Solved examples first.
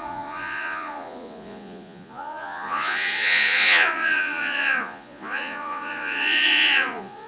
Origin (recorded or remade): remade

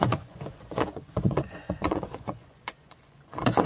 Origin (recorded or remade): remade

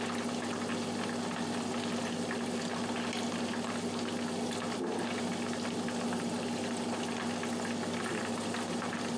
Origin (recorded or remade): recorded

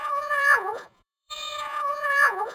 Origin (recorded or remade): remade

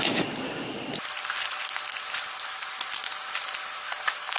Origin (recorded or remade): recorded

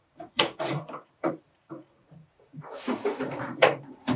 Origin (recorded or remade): remade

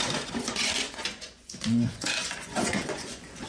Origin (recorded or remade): remade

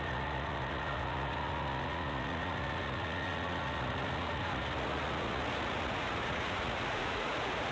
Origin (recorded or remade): remade